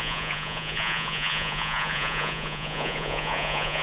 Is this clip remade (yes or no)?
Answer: yes